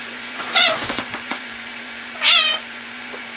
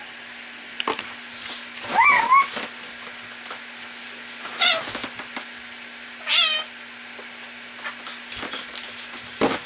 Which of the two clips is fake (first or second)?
first